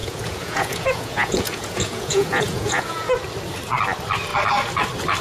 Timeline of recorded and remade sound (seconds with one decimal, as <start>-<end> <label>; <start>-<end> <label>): 0.0-3.1 remade; 3.1-5.2 recorded